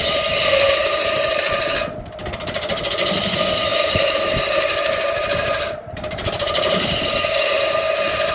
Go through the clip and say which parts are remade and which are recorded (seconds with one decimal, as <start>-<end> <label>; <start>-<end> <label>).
0.0-0.8 recorded; 0.8-1.4 remade; 1.4-3.7 recorded; 3.7-7.0 remade; 7.0-8.3 recorded